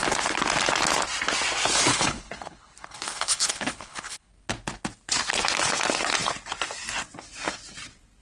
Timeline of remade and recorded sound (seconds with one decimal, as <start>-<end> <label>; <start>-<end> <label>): 0.0-1.9 recorded; 1.9-4.3 remade; 4.3-8.2 recorded